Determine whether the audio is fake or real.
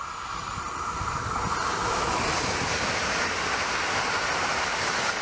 fake